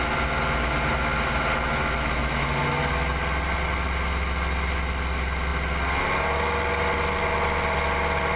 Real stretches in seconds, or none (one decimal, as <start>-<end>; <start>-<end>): 0.0-8.4

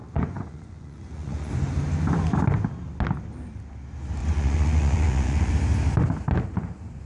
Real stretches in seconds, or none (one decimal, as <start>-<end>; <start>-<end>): 1.5-4.2; 5.5-7.1

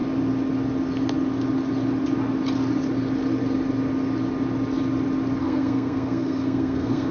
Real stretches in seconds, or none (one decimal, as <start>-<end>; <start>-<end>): 0.0-5.4

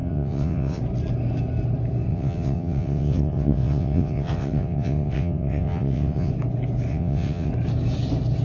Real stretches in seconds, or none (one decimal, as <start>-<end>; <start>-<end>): 0.8-2.1; 6.3-6.9; 7.5-8.4

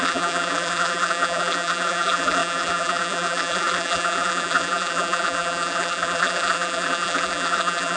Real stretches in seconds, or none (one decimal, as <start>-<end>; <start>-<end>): none

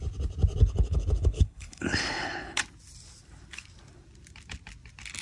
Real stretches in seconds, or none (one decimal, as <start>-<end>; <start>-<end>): 0.0-0.6; 2.6-5.2

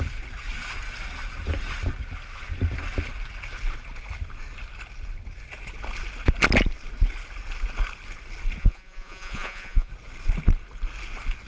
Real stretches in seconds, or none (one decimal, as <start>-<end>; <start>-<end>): 0.0-8.6; 9.9-11.5